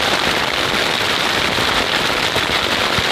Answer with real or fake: real